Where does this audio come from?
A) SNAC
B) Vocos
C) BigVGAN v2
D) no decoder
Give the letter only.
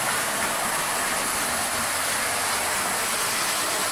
D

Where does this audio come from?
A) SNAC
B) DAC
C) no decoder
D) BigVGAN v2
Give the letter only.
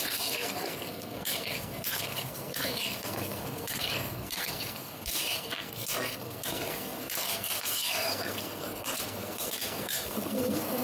A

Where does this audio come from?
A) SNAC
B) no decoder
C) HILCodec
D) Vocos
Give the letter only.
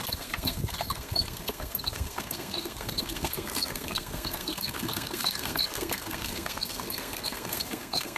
A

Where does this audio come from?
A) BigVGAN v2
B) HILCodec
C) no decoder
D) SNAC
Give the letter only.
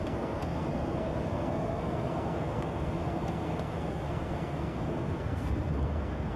D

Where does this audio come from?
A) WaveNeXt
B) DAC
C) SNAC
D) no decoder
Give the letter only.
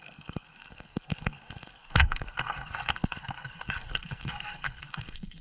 C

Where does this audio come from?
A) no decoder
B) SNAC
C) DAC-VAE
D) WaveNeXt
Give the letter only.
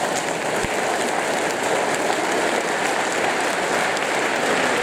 A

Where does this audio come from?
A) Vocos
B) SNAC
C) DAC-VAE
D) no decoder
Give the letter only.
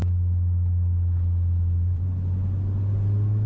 D